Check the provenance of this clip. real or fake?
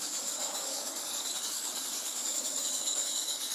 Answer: fake